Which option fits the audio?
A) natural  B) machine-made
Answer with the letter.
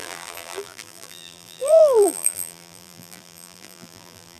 B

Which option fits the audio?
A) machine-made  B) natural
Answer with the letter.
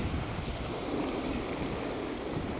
B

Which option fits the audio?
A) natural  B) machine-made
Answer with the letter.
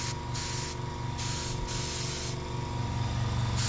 A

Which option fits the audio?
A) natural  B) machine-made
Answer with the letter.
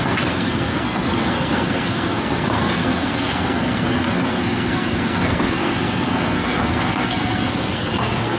B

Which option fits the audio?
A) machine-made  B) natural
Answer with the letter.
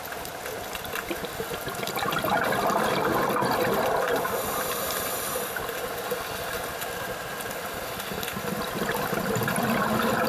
B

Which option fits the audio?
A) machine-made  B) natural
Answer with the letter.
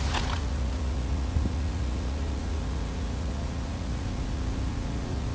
A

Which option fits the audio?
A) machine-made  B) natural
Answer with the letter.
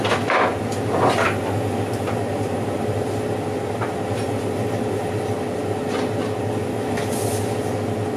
B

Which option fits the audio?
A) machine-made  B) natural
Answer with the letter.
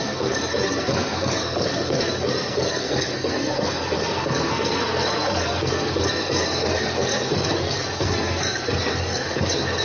A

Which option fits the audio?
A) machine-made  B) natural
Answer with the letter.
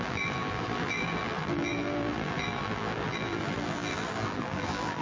A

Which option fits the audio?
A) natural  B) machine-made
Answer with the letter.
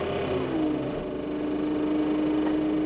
A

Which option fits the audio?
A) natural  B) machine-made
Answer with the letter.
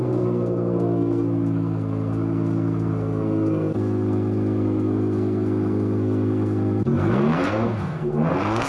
B